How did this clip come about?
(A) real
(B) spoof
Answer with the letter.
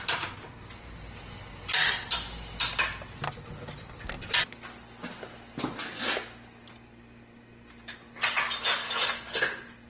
A